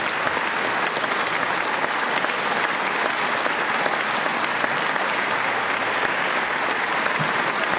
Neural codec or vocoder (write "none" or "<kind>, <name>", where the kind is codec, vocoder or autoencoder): none